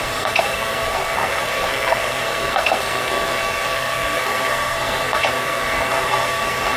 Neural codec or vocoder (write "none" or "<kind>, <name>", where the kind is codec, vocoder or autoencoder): codec, SNAC